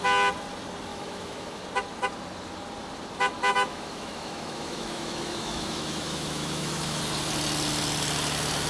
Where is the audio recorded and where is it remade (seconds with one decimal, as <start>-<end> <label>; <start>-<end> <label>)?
0.0-0.9 recorded; 0.9-1.6 remade; 1.6-3.5 recorded; 3.5-7.0 remade; 7.0-8.7 recorded